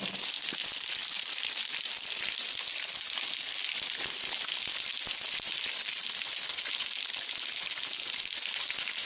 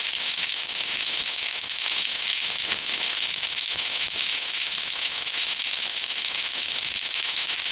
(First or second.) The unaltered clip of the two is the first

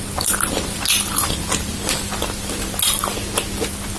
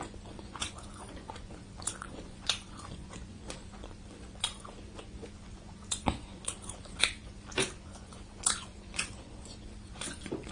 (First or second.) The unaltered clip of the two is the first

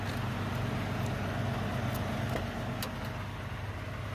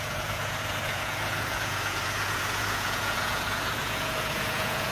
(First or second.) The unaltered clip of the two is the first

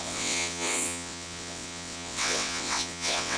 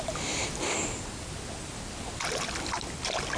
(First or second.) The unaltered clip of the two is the second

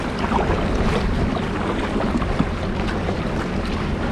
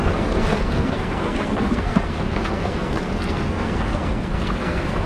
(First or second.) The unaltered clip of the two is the first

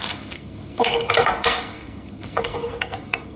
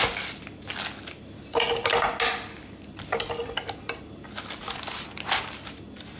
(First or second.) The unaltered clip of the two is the second